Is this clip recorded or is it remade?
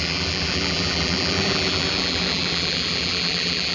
remade